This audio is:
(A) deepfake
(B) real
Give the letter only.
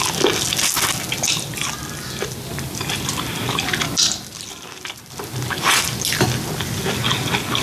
B